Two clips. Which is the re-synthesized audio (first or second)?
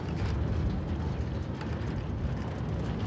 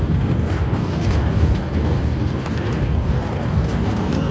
second